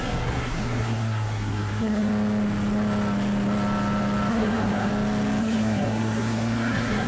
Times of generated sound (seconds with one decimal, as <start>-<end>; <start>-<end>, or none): 0.0-2.1; 4.3-4.9; 5.4-7.1